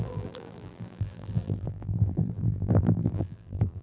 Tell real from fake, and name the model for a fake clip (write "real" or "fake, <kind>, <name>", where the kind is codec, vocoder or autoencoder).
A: fake, vocoder, BigVGAN v2